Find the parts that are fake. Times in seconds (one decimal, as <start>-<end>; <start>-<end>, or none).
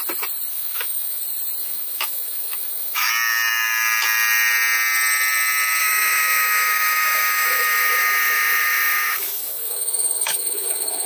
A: 0.5-1.2; 1.6-3.1; 5.8-11.1